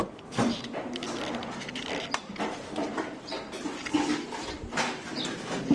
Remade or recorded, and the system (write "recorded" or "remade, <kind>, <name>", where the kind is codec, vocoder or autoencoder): recorded